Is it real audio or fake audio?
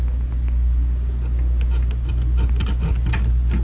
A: real